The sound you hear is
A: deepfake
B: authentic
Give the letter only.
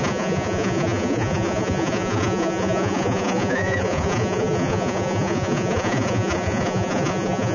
A